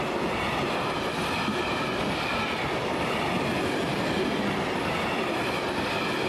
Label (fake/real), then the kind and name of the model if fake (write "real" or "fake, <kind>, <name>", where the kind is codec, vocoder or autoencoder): real